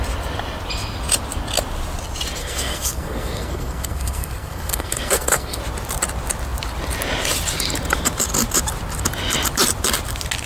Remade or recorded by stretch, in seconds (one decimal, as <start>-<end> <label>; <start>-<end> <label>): 0.0-2.4 recorded; 2.4-5.6 remade; 5.6-10.5 recorded